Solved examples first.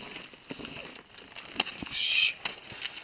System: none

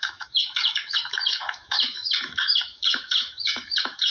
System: autoencoder, DAC-VAE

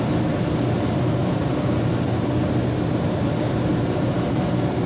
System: none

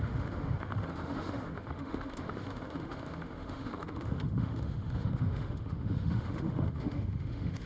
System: autoencoder, DAC-VAE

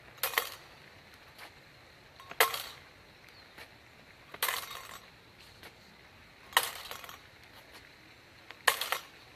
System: none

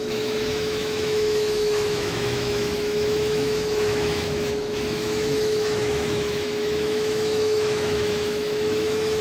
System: autoencoder, DAC-VAE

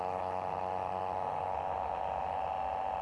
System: autoencoder, DAC-VAE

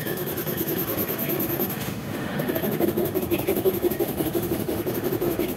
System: autoencoder, DAC-VAE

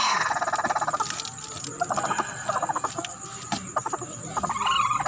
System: none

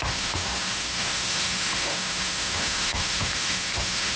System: autoencoder, DAC-VAE